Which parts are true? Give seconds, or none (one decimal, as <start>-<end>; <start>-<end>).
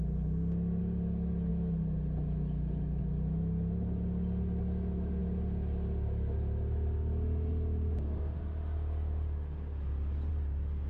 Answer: 0.0-10.9